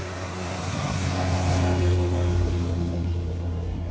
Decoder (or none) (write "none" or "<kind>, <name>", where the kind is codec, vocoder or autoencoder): codec, SNAC